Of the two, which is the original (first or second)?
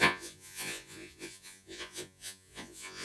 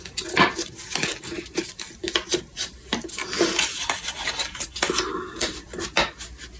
second